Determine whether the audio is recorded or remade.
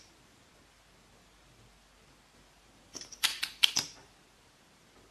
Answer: remade